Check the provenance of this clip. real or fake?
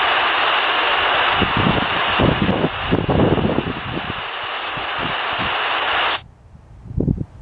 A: real